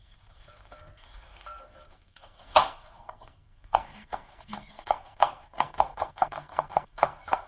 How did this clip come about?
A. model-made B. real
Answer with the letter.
A